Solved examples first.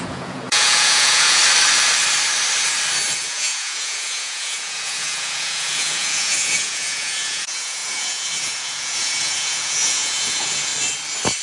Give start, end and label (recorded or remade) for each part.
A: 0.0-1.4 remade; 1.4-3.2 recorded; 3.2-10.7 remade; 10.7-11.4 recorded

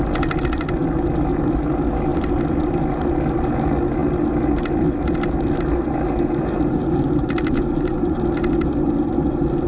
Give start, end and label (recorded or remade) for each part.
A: 0.0-9.7 recorded

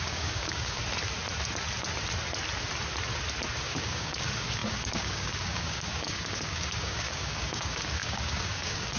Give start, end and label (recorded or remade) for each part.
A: 0.0-0.8 remade; 0.8-3.6 recorded; 3.6-9.0 remade

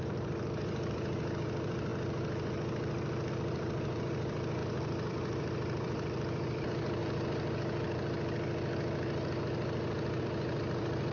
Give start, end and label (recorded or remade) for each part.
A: 0.0-1.9 remade; 1.9-3.3 recorded; 3.3-7.0 remade; 7.0-10.2 recorded; 10.2-11.1 remade

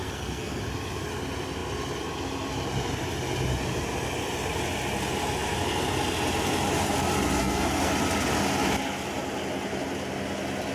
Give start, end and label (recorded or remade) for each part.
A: 0.0-0.6 remade; 0.6-7.4 recorded; 7.4-7.9 remade; 7.9-10.7 recorded

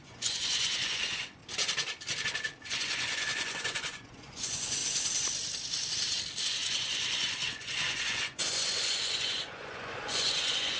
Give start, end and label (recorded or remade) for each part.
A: 0.0-1.4 remade; 1.4-2.6 recorded; 2.6-4.8 remade; 4.8-6.4 recorded; 6.4-10.8 remade

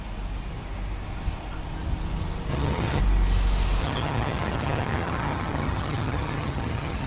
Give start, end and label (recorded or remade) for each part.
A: 0.0-2.5 recorded; 2.5-3.0 remade; 3.0-3.8 recorded; 3.8-7.1 remade